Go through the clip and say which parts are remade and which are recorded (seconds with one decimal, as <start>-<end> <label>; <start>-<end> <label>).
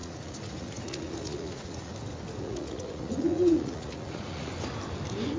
0.0-1.9 remade; 1.9-2.4 recorded; 2.4-4.5 remade; 4.5-5.4 recorded